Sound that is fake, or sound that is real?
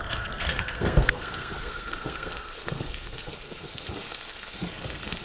fake